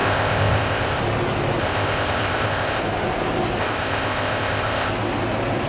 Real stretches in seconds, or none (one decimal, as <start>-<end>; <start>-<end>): 1.0-1.6; 2.8-3.6; 4.9-5.7